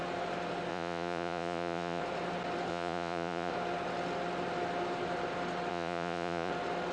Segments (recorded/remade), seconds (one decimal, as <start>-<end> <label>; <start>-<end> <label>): 0.0-0.7 recorded; 0.7-2.0 remade; 2.0-2.7 recorded; 2.7-3.5 remade; 3.5-5.7 recorded; 5.7-6.5 remade; 6.5-6.9 recorded